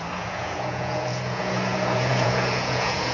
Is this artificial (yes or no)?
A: yes